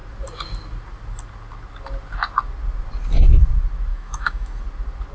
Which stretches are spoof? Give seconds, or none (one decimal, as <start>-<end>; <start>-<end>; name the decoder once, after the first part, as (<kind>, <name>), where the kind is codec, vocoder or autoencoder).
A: 3.9-4.6 (autoencoder, DAC-VAE)